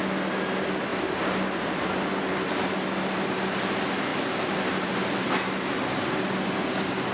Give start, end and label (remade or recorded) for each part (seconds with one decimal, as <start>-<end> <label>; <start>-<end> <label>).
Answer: 0.0-7.1 recorded